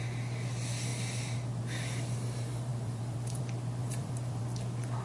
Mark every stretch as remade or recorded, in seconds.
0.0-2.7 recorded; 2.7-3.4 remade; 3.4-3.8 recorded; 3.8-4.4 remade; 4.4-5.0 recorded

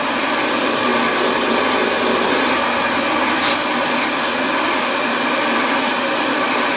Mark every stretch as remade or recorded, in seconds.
0.0-6.8 remade

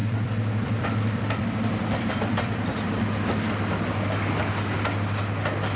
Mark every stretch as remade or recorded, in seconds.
0.0-3.5 remade; 3.5-5.8 recorded